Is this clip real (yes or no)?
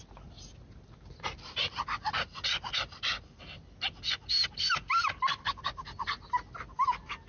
yes